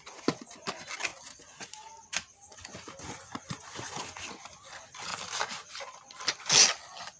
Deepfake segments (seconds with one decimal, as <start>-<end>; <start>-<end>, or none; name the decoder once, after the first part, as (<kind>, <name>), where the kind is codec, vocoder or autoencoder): none